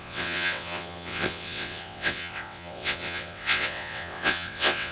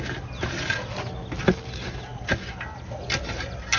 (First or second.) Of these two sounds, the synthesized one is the first